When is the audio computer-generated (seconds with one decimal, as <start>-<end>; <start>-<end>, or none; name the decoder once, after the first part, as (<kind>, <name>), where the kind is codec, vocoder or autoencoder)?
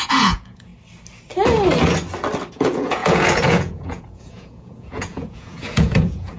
0.0-0.7 (vocoder, Vocos); 2.5-6.4